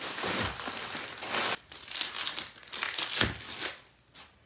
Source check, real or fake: real